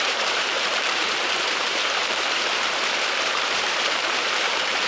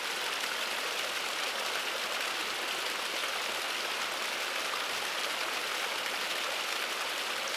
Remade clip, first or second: first